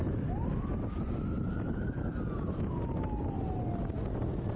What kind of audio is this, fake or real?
real